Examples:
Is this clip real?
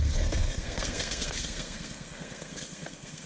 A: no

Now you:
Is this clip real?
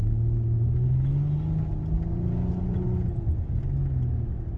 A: yes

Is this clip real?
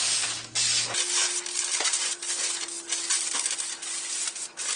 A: yes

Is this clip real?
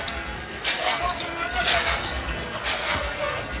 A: no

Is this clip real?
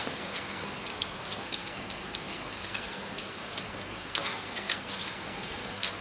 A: no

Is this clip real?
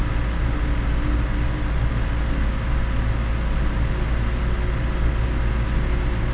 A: yes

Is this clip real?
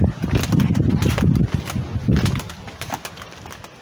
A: yes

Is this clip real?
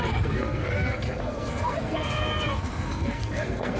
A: no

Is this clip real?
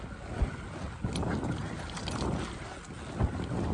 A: yes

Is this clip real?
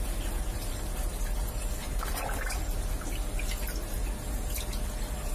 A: yes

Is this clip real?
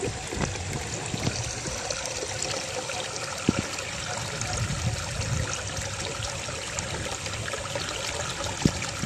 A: yes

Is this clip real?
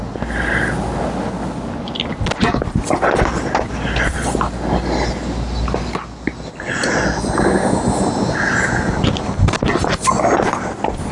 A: yes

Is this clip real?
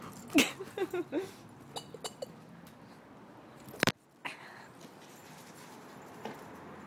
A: yes